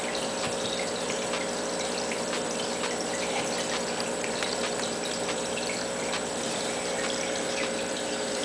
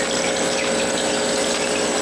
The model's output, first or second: first